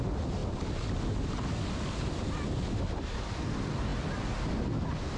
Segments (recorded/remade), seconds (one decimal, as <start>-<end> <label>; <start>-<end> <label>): 0.0-5.2 recorded